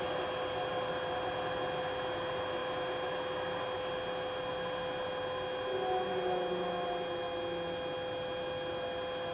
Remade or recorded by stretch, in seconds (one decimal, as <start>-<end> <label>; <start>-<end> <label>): 0.0-9.3 recorded

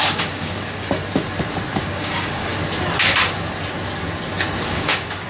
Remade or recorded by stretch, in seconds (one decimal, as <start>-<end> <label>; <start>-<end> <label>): 0.0-1.0 remade; 1.0-1.8 recorded; 1.8-2.5 remade; 2.5-4.7 recorded; 4.7-5.3 remade

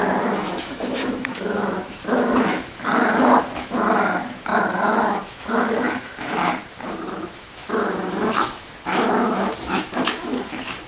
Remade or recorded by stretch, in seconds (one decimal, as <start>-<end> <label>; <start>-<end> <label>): 0.0-6.4 remade; 6.4-7.2 recorded; 7.2-10.9 remade